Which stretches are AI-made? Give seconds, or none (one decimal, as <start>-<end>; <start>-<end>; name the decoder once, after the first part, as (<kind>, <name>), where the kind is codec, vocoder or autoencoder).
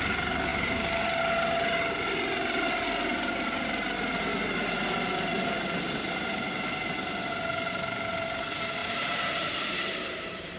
8.8-9.6 (vocoder, BigVGAN v2)